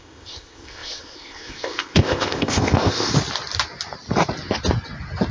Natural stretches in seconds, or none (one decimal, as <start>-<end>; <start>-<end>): 3.1-5.3

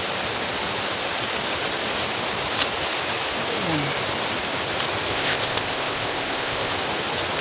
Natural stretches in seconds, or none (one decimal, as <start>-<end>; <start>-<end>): 0.0-5.1; 6.7-7.4

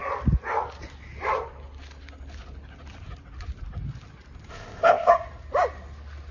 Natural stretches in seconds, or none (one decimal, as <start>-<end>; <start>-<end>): 0.0-4.5; 5.1-6.3

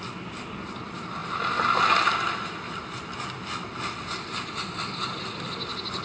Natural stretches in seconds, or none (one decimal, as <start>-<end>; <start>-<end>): 0.0-6.0

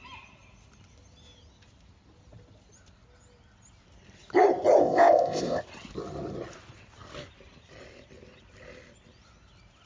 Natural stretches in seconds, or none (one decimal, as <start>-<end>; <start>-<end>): 0.0-4.8; 5.6-9.9

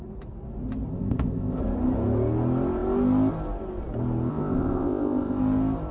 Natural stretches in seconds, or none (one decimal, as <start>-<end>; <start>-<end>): 0.0-0.9; 1.6-4.3; 5.4-5.9